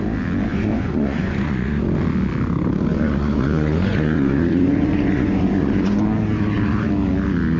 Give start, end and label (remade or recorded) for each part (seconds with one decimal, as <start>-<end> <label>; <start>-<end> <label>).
0.0-0.5 recorded; 0.5-1.8 remade; 1.8-2.9 recorded; 2.9-6.9 remade; 6.9-7.6 recorded